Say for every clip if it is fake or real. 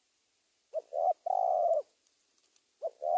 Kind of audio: real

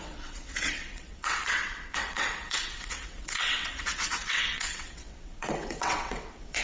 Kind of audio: fake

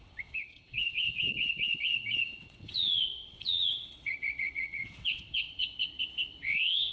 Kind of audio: fake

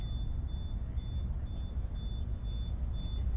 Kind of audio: real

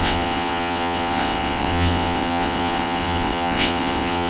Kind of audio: fake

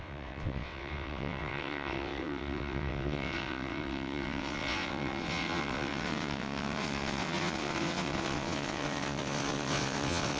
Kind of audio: fake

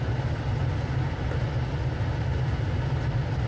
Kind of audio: real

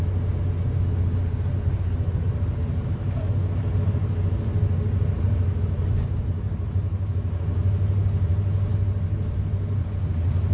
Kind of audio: real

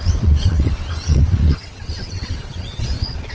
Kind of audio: fake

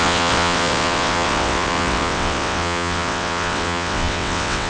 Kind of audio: fake